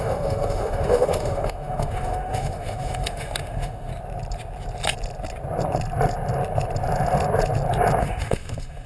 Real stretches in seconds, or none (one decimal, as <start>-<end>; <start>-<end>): 3.9-8.0